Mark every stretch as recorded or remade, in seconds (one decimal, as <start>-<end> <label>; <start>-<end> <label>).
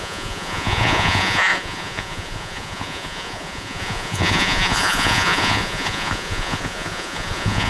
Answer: 0.0-7.7 remade